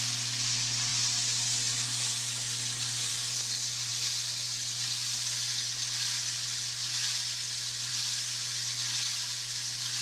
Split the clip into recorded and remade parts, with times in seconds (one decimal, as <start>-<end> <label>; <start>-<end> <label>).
0.0-10.0 recorded